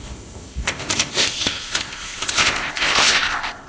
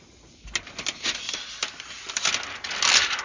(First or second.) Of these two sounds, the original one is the second